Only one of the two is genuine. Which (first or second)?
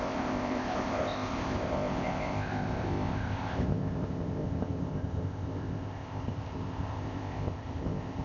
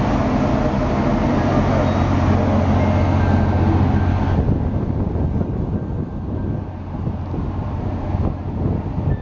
second